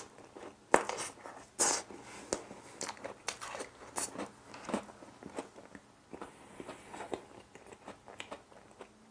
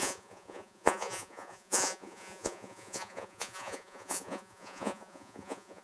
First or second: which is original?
first